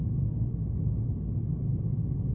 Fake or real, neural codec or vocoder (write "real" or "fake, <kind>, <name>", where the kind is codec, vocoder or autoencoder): real